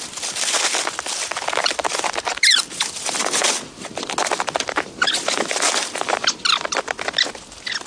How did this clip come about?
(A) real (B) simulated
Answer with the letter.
A